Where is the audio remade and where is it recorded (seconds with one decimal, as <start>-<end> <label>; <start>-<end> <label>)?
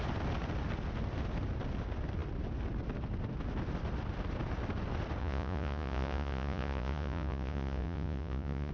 0.0-5.2 recorded; 5.2-8.7 remade